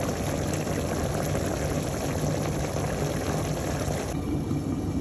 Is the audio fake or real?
real